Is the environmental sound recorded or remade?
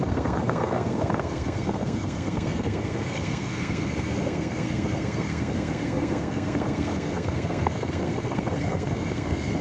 remade